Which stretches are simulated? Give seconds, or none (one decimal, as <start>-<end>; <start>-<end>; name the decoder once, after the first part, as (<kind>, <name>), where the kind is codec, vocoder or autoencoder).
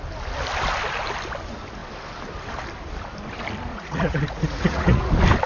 3.7-5.1 (vocoder, Vocos)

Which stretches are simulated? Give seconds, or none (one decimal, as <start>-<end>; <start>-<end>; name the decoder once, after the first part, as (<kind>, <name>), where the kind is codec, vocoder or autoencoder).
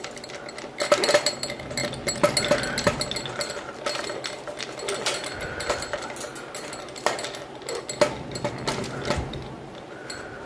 none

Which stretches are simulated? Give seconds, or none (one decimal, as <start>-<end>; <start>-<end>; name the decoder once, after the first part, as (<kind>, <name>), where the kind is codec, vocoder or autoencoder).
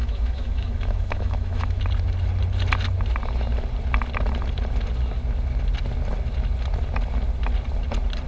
0.0-1.8 (autoencoder, DAC-VAE)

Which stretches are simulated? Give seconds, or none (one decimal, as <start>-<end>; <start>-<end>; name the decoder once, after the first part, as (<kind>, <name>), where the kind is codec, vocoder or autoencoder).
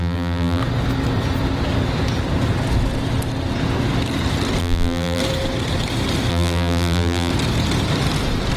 0.0-0.6 (vocoder, BigVGAN v2); 4.6-5.2; 6.3-7.3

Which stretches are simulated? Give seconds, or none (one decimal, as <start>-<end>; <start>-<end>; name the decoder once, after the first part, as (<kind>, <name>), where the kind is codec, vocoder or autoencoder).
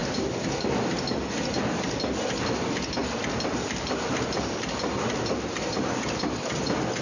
3.0-4.1 (vocoder, BigVGAN v2)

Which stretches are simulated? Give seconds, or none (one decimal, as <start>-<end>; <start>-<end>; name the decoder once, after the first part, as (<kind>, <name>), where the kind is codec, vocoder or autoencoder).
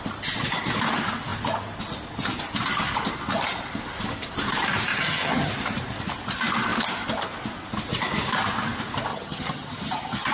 4.9-5.5 (vocoder, HiFi-GAN); 9.1-10.3